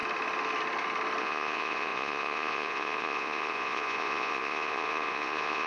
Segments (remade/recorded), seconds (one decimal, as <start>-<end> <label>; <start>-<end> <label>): 0.0-1.2 recorded; 1.2-5.7 remade